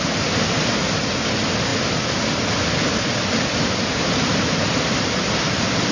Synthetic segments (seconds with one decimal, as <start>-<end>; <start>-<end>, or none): none